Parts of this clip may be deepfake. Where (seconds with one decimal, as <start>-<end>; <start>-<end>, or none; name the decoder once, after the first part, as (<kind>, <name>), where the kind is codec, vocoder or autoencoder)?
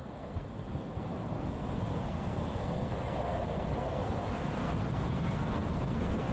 0.0-6.3 (codec, SNAC)